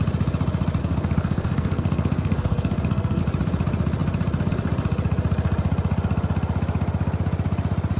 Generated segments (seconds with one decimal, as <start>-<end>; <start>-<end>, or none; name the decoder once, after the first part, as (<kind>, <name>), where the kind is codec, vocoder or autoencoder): 0.8-3.2 (codec, SNAC)

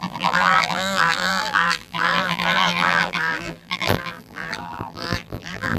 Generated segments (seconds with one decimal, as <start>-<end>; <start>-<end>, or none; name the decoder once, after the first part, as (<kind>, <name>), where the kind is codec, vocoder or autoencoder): 0.0-5.8 (vocoder, BigVGAN v2)